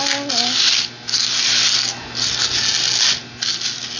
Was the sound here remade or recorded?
recorded